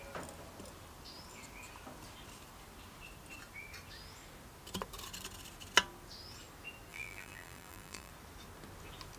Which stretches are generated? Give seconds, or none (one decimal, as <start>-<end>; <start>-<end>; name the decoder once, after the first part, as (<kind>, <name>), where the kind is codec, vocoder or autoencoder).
6.9-8.1 (vocoder, BigVGAN v2)